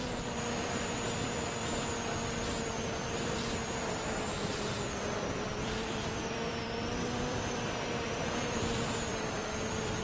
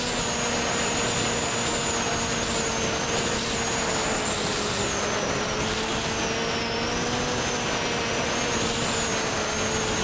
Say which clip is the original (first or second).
second